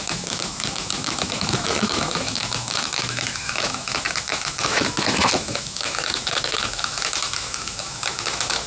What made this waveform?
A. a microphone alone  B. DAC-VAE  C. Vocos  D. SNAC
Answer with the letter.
B